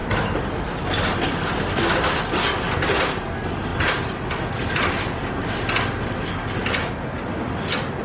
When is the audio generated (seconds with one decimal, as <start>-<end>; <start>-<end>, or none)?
3.7-5.3